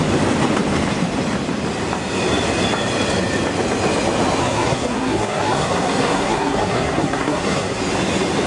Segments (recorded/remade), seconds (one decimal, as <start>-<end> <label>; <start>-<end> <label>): 0.0-4.4 recorded; 4.4-7.8 remade; 7.8-8.5 recorded